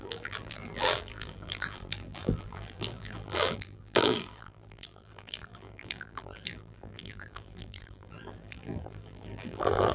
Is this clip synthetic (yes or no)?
yes